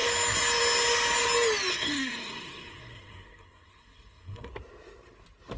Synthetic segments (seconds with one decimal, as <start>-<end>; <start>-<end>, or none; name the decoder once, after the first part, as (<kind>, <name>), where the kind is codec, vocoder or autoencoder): 1.7-4.5 (codec, SNAC)